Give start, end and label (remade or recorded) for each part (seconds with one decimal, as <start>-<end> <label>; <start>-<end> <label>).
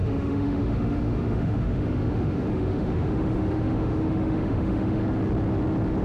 0.0-5.0 remade; 5.0-6.0 recorded